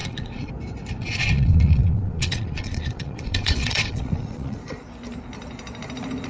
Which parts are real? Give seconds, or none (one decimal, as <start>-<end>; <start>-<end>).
0.5-1.0; 4.8-6.3